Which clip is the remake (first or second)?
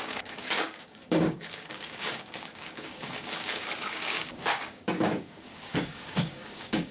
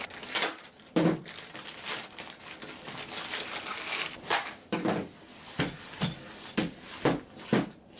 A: first